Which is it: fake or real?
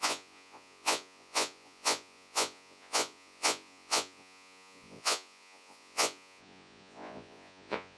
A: fake